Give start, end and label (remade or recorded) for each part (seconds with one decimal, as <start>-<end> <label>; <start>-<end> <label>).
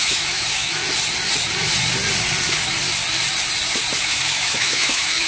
0.0-0.8 remade; 0.8-4.0 recorded; 4.0-5.3 remade